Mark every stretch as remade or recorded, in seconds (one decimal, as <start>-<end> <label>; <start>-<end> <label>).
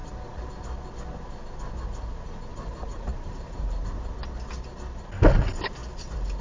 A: 0.0-0.5 remade; 0.5-2.5 recorded; 2.5-4.1 remade; 4.1-6.4 recorded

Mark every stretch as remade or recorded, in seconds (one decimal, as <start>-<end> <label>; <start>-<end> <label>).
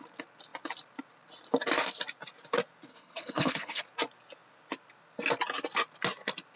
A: 0.0-2.9 recorded; 2.9-3.8 remade; 3.8-6.6 recorded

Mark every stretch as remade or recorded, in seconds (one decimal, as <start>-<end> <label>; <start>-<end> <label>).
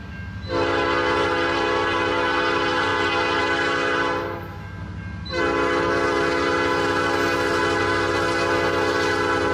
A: 0.0-9.5 recorded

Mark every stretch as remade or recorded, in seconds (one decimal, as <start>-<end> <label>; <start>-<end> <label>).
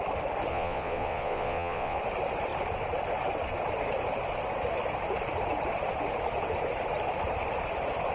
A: 0.0-0.5 recorded; 0.5-2.0 remade; 2.0-8.1 recorded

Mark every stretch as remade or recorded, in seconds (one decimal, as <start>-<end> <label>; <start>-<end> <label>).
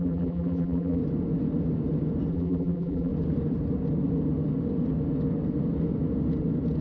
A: 0.0-1.0 remade; 1.0-2.3 recorded; 2.3-3.1 remade; 3.1-6.8 recorded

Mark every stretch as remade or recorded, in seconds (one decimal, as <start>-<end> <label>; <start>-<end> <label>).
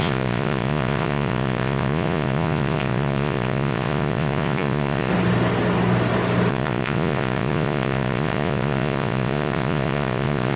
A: 0.0-5.1 remade; 5.1-6.5 recorded; 6.5-10.6 remade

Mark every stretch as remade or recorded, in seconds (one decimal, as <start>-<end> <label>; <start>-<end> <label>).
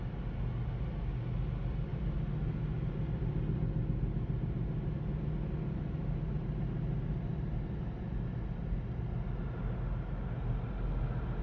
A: 0.0-11.4 recorded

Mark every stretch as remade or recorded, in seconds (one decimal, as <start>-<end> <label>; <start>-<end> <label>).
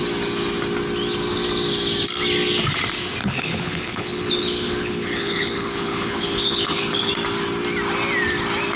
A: 0.0-3.2 recorded; 3.2-7.1 remade; 7.1-8.8 recorded